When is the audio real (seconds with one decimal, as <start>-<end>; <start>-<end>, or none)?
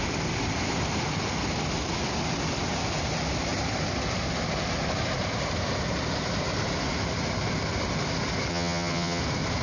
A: 0.0-8.5; 9.2-9.6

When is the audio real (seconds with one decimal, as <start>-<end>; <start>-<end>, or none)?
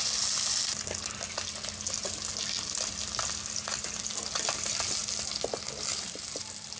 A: 0.0-6.8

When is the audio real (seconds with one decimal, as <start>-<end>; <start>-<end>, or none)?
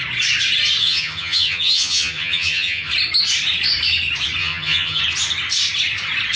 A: 0.0-0.8; 2.9-4.4; 5.0-6.4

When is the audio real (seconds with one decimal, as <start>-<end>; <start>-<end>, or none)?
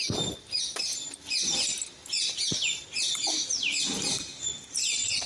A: 0.0-5.3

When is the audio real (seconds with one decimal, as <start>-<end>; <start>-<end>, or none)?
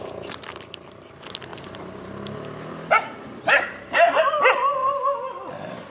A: 0.0-1.5; 4.2-4.8; 5.5-5.9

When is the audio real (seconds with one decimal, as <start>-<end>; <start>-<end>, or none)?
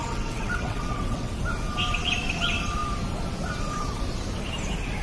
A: 1.3-5.0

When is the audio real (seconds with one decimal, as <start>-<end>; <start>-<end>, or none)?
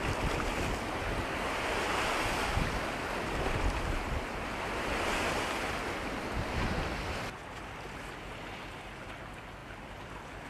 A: 0.0-10.5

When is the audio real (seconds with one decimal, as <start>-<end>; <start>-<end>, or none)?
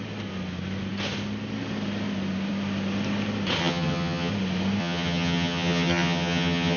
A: 0.0-3.6; 4.3-4.8